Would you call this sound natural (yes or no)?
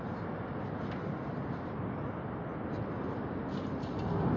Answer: yes